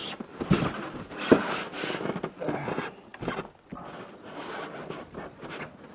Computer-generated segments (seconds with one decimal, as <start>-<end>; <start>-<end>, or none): 0.0-1.1